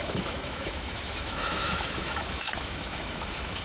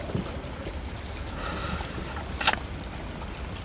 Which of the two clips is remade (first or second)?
first